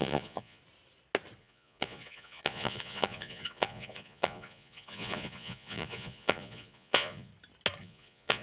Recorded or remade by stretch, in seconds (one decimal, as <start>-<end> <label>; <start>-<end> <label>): 0.0-0.6 remade; 0.6-1.4 recorded; 1.4-7.3 remade; 7.3-7.8 recorded; 7.8-8.4 remade

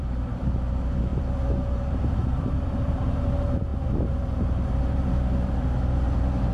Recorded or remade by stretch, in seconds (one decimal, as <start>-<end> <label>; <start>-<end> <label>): 0.0-6.5 remade

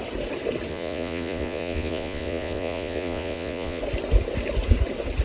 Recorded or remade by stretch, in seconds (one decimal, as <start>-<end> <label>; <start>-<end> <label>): 0.0-0.7 recorded; 0.7-3.8 remade; 3.8-5.2 recorded

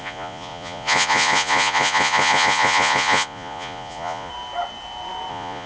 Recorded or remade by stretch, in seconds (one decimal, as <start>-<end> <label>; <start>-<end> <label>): 0.0-4.3 remade; 4.3-5.3 recorded; 5.3-5.7 remade

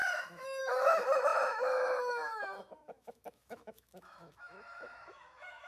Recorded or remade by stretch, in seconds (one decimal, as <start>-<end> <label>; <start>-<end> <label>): 0.0-5.7 remade

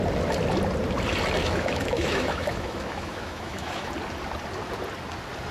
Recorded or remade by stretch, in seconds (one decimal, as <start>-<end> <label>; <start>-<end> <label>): 0.0-1.4 recorded; 1.4-3.9 remade; 3.9-5.5 recorded